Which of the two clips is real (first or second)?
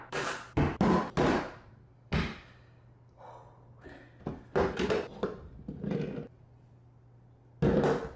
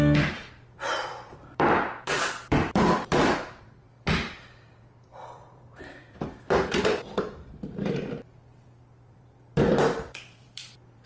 first